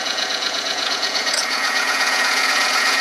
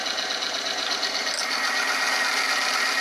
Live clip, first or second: second